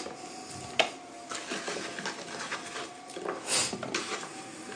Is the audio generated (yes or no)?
no